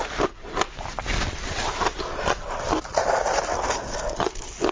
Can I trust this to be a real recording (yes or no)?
yes